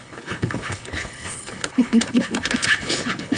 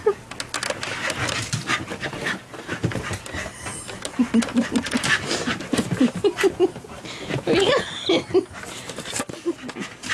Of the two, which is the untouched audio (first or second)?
second